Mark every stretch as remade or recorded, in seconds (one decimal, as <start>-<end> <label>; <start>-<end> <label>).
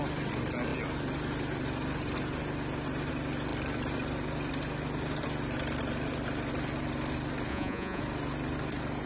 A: 0.0-7.5 recorded; 7.5-8.0 remade; 8.0-9.1 recorded